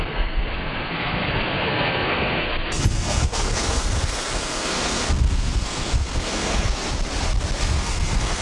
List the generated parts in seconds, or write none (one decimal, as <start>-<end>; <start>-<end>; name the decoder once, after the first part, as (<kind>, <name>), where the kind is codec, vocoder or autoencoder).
0.0-6.8 (codec, SNAC); 7.6-8.4